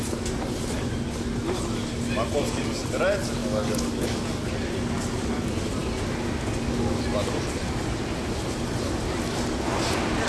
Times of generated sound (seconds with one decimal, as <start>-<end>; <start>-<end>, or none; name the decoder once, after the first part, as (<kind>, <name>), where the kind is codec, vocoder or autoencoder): 3.2-4.5 (codec, DAC)